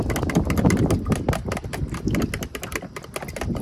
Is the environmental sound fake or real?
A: real